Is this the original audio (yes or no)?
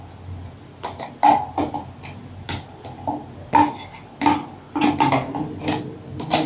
yes